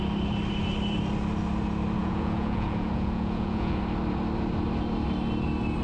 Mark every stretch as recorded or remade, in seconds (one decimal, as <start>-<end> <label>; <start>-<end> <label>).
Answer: 0.0-2.0 recorded; 2.0-3.8 remade; 3.8-5.8 recorded